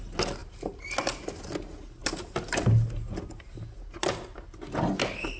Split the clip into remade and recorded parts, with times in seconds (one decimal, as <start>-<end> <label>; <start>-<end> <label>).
0.0-5.4 recorded